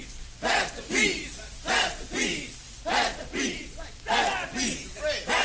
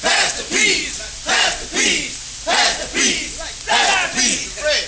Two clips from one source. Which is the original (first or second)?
second